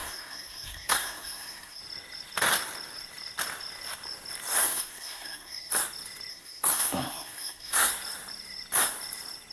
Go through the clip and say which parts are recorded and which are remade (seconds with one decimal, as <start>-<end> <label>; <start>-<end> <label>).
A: 0.0-1.8 remade; 1.8-4.6 recorded; 4.6-5.7 remade; 5.7-6.3 recorded; 6.3-7.9 remade; 7.9-9.5 recorded